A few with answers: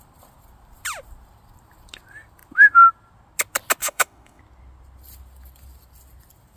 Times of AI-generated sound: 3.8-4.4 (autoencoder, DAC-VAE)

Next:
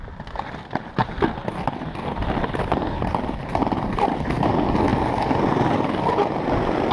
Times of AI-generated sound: none

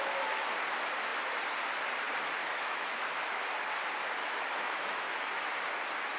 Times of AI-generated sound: 2.4-3.5 (autoencoder, DAC-VAE); 4.2-5.0

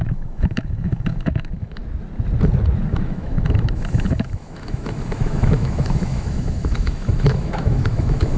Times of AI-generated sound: 0.0-1.8 (autoencoder, DAC-VAE); 2.9-8.4